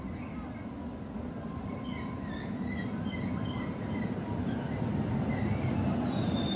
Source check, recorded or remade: recorded